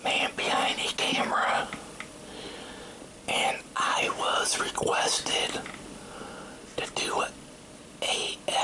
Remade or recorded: recorded